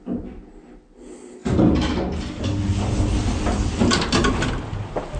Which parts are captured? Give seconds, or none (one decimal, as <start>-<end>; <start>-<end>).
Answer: 0.0-5.2